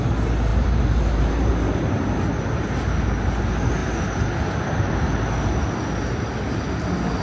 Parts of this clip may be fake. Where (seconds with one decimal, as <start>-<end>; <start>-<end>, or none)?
0.5-1.5